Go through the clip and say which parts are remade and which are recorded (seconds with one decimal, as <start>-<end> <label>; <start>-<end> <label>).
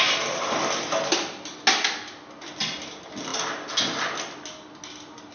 0.0-5.3 recorded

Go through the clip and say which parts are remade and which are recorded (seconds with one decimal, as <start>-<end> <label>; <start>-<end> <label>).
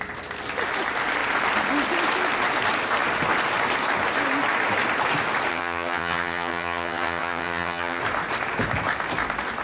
0.0-5.5 recorded; 5.5-8.0 remade; 8.0-9.6 recorded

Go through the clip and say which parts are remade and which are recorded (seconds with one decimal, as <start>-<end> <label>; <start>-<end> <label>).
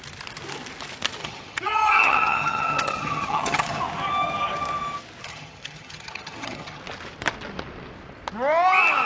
0.0-1.2 recorded; 1.2-3.8 remade; 3.8-5.3 recorded; 5.3-6.8 remade; 6.8-9.1 recorded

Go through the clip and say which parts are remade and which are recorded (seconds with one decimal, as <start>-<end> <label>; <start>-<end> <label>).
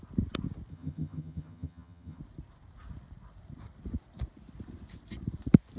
0.0-0.7 recorded; 0.7-2.2 remade; 2.2-5.8 recorded